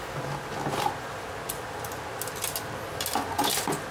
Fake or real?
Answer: real